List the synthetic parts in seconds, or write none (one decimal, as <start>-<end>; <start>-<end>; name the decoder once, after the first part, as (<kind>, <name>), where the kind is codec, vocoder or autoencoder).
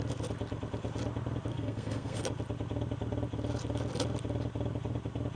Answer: 1.5-2.3 (codec, SNAC)